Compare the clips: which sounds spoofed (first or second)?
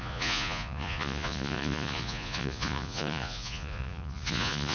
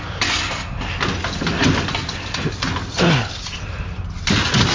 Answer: first